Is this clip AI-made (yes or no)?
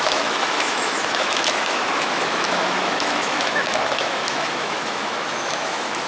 yes